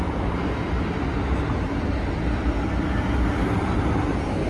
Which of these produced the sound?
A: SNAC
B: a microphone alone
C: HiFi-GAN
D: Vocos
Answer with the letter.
B